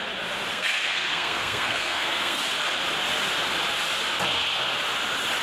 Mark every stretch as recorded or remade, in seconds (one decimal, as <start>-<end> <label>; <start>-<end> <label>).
0.0-0.5 recorded; 0.5-2.4 remade; 2.4-5.4 recorded